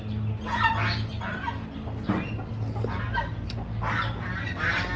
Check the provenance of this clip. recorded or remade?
recorded